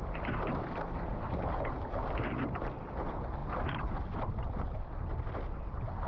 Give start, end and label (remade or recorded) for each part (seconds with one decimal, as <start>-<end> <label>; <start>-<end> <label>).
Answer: 0.0-3.4 recorded; 3.4-5.2 remade; 5.2-6.1 recorded